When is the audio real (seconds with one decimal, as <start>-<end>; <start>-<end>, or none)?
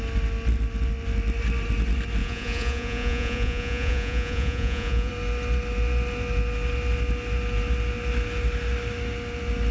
0.0-2.2; 5.1-9.7